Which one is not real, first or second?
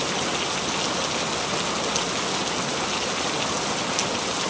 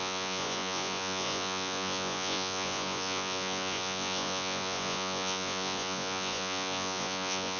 second